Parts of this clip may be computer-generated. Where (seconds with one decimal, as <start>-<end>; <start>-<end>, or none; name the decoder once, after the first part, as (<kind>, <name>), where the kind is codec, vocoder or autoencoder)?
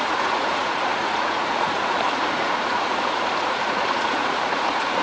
0.0-5.0 (vocoder, Vocos)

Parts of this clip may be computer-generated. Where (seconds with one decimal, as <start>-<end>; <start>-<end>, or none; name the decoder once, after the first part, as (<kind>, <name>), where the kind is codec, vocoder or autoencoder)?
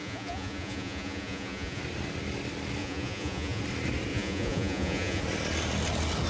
0.0-1.8 (vocoder, Vocos); 2.8-3.6; 4.1-5.2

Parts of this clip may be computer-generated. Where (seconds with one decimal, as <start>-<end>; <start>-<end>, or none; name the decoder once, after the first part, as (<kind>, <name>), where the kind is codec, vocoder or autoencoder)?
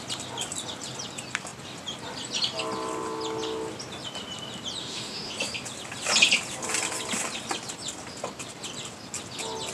4.8-5.3 (autoencoder, DAC-VAE)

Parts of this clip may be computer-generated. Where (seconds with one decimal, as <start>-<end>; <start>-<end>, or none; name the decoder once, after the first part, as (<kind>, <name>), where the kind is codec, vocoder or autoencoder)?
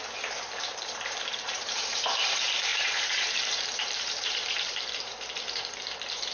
0.0-6.3 (vocoder, BigVGAN v2)